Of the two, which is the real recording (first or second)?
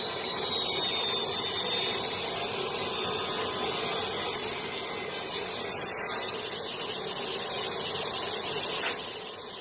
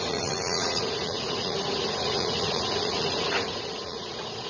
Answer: first